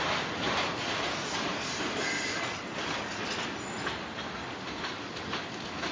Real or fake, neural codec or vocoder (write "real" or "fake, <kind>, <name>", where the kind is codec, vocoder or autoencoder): real